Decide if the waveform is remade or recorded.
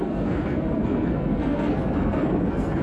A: remade